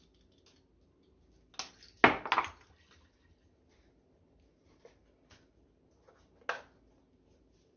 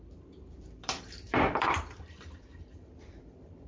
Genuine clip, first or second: first